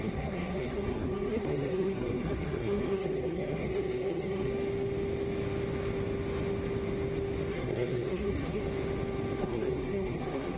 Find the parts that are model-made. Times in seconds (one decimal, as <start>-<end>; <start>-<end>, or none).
0.0-4.5; 7.5-8.6; 9.4-10.6